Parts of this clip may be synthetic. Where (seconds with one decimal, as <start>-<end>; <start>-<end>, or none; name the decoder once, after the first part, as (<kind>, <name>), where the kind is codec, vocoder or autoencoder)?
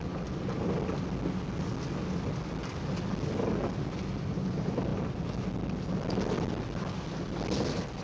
none